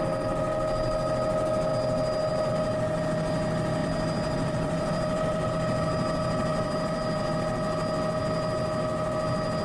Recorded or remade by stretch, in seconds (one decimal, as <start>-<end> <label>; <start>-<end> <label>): 0.0-3.8 recorded; 3.8-5.5 remade; 5.5-6.5 recorded; 6.5-7.3 remade; 7.3-9.6 recorded